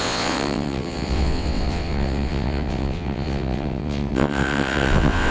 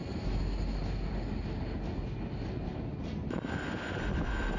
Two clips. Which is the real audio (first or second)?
second